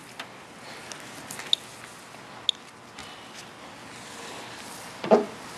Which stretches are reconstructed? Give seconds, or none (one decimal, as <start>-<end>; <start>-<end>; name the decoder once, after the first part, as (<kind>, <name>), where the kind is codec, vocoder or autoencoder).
none